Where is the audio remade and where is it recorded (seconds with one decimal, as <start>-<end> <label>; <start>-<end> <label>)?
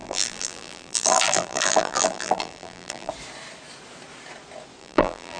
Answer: 0.0-3.1 remade; 3.1-4.8 recorded; 4.8-5.4 remade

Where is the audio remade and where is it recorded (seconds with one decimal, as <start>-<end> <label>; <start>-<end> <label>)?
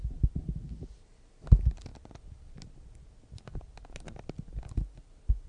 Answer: 0.0-5.5 recorded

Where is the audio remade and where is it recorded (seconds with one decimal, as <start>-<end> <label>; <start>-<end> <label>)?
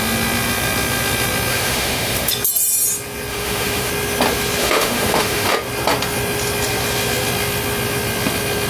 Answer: 0.0-1.5 recorded; 1.5-2.3 remade; 2.3-3.3 recorded; 3.3-3.9 remade; 3.9-4.6 recorded; 4.6-5.5 remade; 5.5-8.7 recorded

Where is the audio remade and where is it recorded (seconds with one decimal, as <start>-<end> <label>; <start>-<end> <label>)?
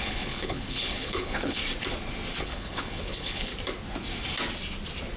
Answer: 0.0-1.6 remade; 1.6-2.4 recorded; 2.4-3.5 remade; 3.5-5.2 recorded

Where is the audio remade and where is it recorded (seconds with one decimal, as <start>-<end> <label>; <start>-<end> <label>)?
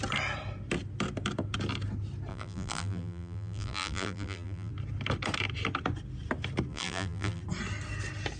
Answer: 0.0-2.3 recorded; 2.3-4.7 remade; 4.7-6.7 recorded; 6.7-7.4 remade; 7.4-8.4 recorded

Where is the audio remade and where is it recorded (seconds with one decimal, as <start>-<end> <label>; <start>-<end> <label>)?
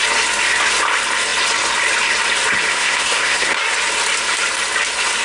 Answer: 0.0-2.7 recorded; 2.7-3.6 remade; 3.6-5.2 recorded